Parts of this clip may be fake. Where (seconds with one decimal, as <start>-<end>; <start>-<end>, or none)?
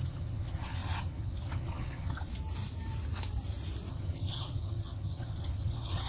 0.0-2.3; 3.9-6.1